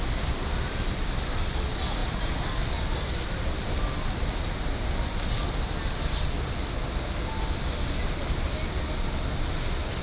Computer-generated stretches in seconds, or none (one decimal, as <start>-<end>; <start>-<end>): 3.9-4.6